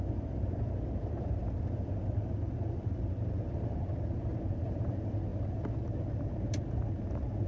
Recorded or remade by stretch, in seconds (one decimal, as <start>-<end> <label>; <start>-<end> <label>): 0.0-7.5 recorded